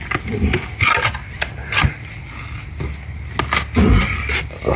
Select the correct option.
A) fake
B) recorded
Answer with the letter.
B